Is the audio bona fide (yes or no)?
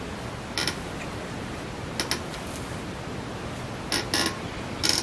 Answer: yes